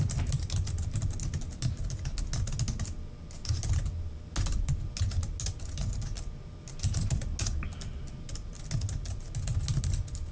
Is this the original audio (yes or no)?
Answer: yes